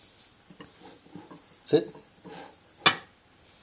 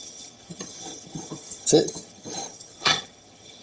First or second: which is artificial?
second